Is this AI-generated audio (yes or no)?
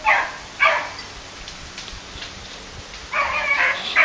no